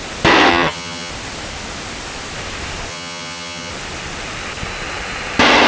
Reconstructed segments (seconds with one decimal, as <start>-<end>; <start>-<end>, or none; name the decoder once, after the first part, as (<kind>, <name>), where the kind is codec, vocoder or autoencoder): 0.5-1.1 (vocoder, HiFi-GAN); 2.9-3.7